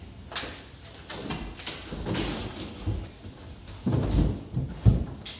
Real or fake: real